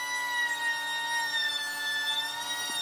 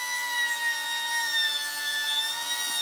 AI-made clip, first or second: second